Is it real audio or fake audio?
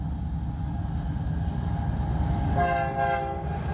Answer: real